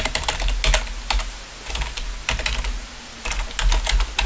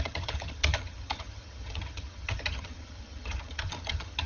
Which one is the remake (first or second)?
second